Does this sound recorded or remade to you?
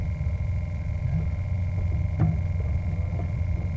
recorded